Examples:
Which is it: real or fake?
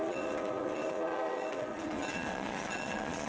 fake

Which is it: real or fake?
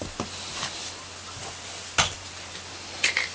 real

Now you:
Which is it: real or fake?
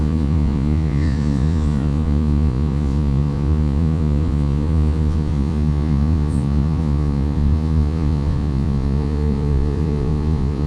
fake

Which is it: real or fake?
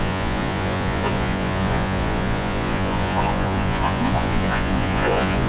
fake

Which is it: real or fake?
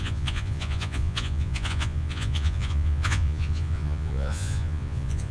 fake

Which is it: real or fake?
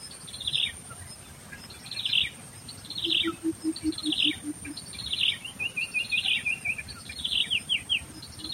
real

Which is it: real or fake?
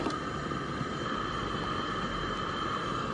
real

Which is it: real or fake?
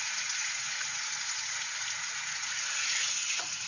fake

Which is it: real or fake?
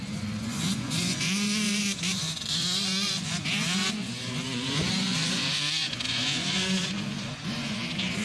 fake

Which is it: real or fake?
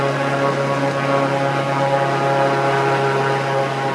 real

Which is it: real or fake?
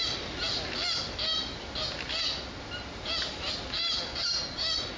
real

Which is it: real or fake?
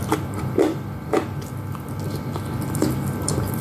real